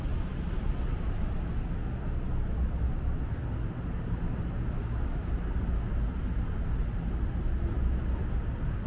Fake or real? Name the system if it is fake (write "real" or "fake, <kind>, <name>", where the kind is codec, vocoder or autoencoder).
real